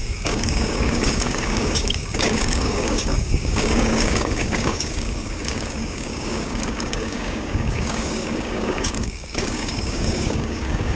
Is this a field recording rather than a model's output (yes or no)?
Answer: no